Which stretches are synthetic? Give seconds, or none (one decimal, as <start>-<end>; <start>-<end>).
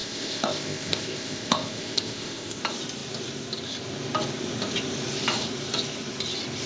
0.0-2.6